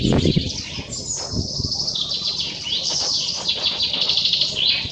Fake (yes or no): no